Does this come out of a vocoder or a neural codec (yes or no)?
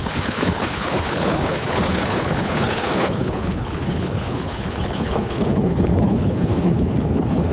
yes